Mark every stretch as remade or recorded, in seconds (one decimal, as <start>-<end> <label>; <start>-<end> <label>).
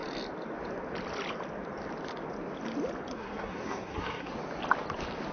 0.0-3.1 recorded; 3.1-4.3 remade; 4.3-5.3 recorded